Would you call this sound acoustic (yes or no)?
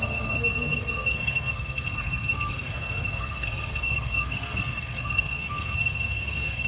no